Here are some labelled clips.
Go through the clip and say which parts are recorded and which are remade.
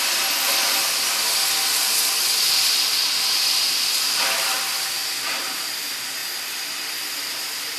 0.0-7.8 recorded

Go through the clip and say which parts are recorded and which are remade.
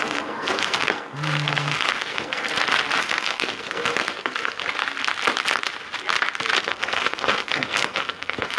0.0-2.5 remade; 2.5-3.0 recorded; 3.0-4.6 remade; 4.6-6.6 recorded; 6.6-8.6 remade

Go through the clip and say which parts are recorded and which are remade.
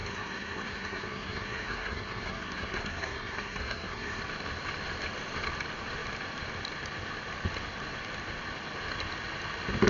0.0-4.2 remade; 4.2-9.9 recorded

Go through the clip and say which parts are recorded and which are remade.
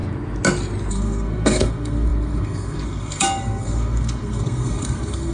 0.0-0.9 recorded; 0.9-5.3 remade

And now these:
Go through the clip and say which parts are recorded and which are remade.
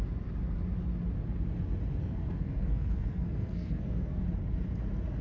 0.0-2.0 recorded; 2.0-4.2 remade; 4.2-5.2 recorded